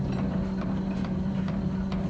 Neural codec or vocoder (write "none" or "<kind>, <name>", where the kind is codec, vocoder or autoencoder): none